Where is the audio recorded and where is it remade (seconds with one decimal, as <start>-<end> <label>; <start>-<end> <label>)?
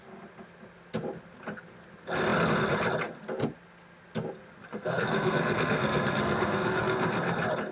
0.0-4.7 recorded; 4.7-7.3 remade; 7.3-7.7 recorded